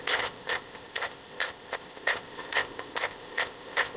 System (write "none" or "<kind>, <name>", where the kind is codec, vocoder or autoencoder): codec, ZipCodec